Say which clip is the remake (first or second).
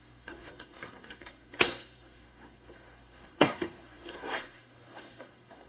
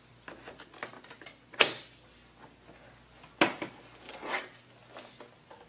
first